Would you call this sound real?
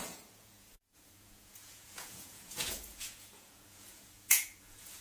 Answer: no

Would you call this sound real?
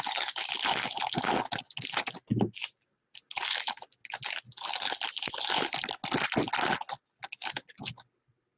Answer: yes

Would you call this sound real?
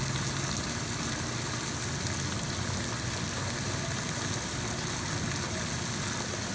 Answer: yes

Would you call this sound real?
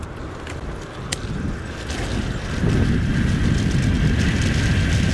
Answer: yes